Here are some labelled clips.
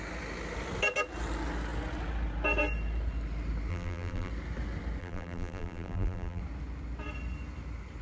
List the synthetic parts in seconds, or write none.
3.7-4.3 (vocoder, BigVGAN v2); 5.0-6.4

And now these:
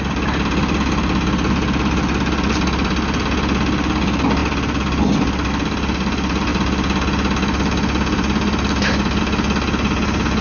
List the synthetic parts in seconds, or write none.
none

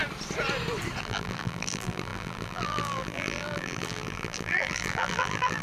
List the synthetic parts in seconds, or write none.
1.0-5.6 (vocoder, BigVGAN v2)

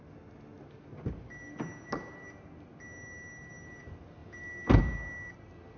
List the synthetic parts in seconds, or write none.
none

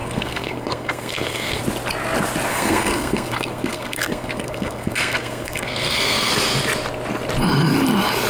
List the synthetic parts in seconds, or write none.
0.0-1.6 (codec, SNAC); 2.5-6.3

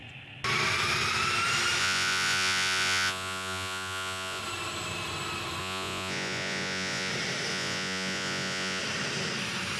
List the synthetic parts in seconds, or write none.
1.8-4.4 (vocoder, Vocos); 5.6-7.1; 7.5-8.8